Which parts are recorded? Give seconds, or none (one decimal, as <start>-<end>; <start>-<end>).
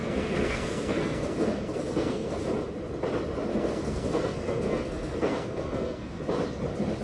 2.4-3.5; 6.2-7.0